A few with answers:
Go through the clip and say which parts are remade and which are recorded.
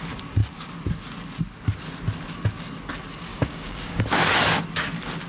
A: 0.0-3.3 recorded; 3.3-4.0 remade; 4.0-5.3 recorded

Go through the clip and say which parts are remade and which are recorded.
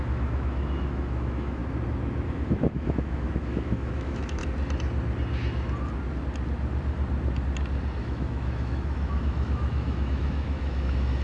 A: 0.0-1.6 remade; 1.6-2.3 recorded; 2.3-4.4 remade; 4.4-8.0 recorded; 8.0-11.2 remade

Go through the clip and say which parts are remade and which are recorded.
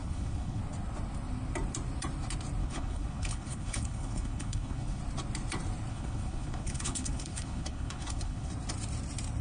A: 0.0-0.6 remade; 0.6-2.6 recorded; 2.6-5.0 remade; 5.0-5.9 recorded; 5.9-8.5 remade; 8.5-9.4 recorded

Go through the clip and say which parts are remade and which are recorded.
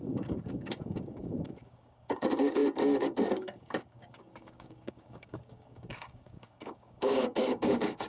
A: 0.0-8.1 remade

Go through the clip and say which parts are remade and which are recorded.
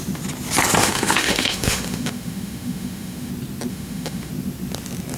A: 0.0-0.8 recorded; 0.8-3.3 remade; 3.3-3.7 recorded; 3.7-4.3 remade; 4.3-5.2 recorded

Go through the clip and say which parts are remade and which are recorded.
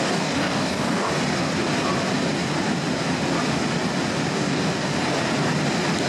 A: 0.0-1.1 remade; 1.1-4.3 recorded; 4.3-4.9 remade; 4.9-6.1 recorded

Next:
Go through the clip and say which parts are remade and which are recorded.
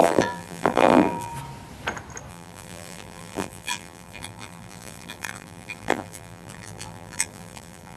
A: 0.0-1.3 remade; 1.3-2.3 recorded; 2.3-8.0 remade